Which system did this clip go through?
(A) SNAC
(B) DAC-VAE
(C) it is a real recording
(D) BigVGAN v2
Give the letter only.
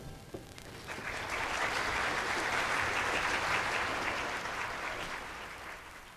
C